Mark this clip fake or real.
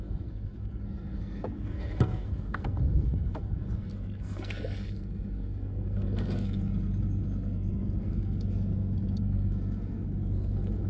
fake